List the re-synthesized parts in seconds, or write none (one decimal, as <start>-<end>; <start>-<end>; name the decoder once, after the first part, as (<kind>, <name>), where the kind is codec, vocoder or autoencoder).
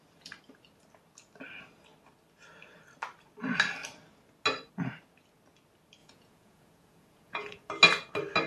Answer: 6.0-7.7 (vocoder, Vocos)